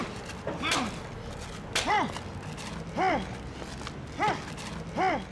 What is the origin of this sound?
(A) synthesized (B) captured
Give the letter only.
B